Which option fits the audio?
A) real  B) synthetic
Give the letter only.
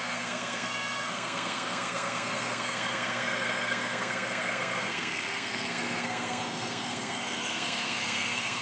B